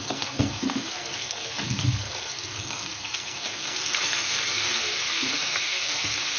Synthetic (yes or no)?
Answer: yes